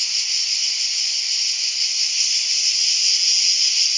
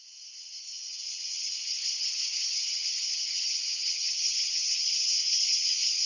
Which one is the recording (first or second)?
first